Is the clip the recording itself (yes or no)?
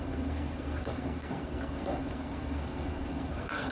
no